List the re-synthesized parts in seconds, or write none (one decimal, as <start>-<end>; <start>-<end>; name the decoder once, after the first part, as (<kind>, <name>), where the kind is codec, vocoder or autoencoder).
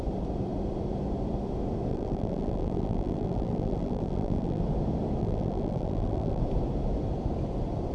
1.9-4.6 (vocoder, BigVGAN v2); 5.2-6.4